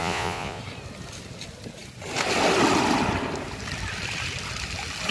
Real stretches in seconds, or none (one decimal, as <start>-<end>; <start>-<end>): 0.6-5.1